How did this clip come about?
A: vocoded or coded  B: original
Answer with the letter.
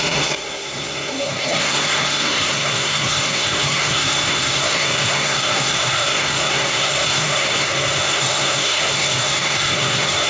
A